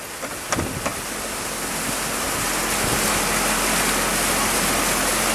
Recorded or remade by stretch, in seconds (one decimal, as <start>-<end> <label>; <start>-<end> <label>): 0.0-5.3 recorded